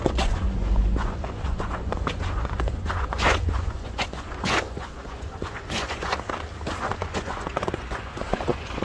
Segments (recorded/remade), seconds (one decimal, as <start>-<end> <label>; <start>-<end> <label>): 0.0-6.1 remade; 6.1-6.8 recorded; 6.8-8.8 remade